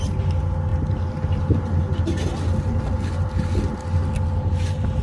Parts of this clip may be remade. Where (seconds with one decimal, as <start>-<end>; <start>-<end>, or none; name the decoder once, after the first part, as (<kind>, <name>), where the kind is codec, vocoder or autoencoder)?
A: none